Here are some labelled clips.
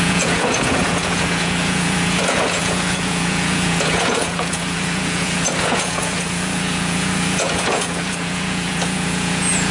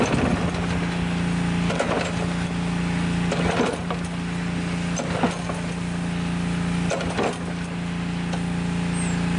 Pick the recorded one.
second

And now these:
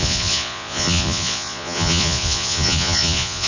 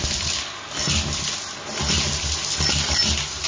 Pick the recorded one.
second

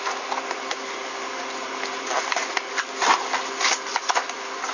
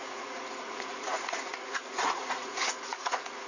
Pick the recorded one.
first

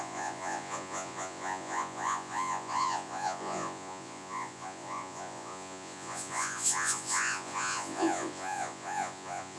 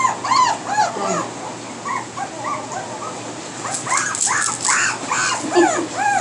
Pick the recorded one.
second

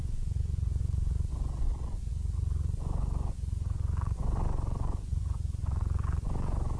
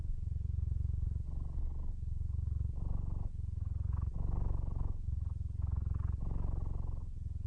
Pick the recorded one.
second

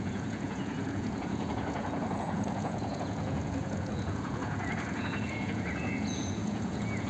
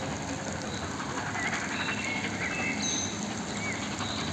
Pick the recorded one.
second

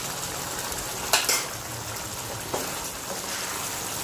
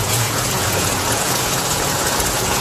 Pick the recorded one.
first